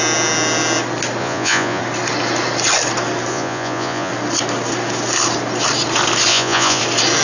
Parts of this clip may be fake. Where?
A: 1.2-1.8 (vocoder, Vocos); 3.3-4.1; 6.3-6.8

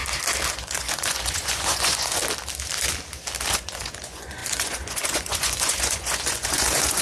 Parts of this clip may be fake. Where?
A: 0.5-2.2 (vocoder, Vocos); 3.5-7.0

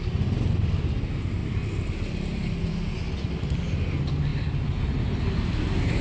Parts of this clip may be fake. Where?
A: none

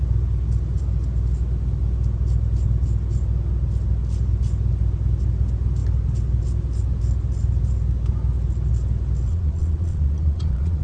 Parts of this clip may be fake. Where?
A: 9.3-10.8 (vocoder, Vocos)

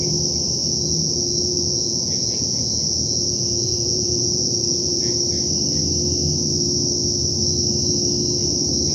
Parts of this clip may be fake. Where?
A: 0.6-5.1 (vocoder, Vocos)